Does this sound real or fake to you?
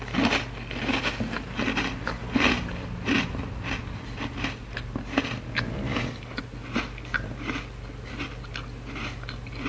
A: real